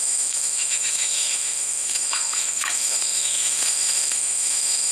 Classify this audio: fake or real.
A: fake